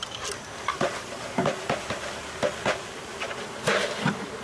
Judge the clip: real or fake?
real